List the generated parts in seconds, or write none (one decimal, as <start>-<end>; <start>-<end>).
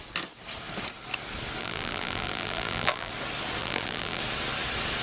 1.6-3.1; 3.6-4.2